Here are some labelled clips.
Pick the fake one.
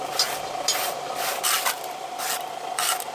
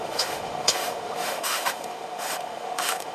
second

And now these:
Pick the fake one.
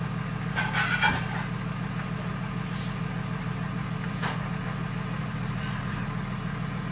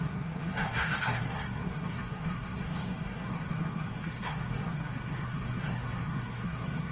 second